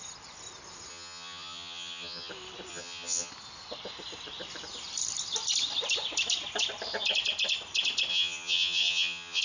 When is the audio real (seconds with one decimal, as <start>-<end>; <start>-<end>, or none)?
0.0-0.9; 2.3-2.7; 3.3-8.1